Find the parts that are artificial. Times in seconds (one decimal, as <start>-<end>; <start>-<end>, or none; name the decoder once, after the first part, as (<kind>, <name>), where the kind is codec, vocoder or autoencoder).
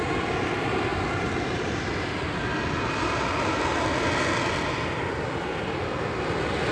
none